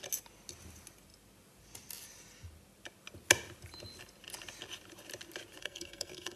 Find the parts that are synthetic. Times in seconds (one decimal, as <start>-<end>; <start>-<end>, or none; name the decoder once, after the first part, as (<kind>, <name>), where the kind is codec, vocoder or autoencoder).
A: 5.6-6.4 (codec, SNAC)